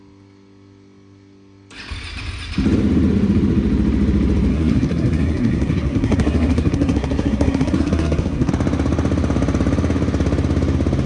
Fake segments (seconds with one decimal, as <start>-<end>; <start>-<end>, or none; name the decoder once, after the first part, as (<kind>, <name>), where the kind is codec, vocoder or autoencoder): 4.5-8.5 (codec, SNAC)